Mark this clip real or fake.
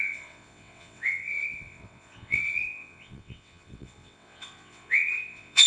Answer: fake